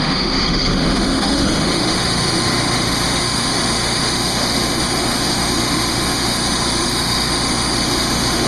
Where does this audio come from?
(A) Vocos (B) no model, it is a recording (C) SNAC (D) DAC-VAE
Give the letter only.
D